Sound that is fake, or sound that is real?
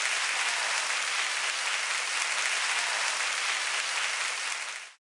real